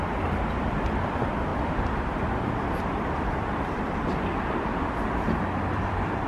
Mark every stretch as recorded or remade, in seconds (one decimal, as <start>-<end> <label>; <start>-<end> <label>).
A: 0.0-6.3 remade